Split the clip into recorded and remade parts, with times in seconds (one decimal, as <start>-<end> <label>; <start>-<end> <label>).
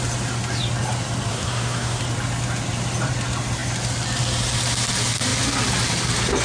0.0-1.3 recorded; 1.3-2.0 remade; 2.0-6.4 recorded